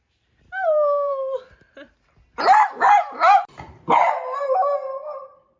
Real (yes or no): no